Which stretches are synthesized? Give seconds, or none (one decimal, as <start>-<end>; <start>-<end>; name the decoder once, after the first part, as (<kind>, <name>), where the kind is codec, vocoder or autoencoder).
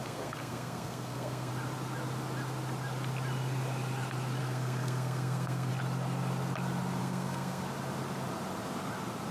0.0-1.5 (codec, SNAC); 4.4-5.7; 7.0-7.6